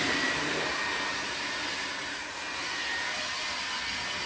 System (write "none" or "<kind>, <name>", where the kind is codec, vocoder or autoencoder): none